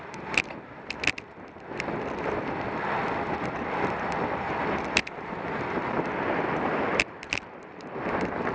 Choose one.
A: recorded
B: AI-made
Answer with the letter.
A